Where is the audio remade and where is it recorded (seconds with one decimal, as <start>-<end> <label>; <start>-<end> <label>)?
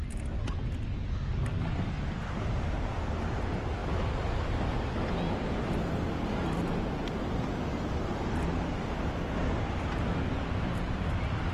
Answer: 0.0-11.5 recorded